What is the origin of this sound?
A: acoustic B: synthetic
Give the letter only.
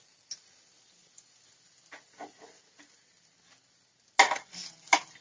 A